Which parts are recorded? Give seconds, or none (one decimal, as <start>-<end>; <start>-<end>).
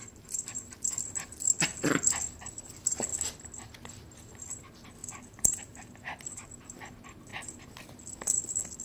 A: 3.1-4.6; 7.3-8.1